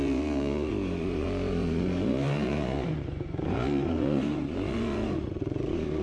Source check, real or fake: fake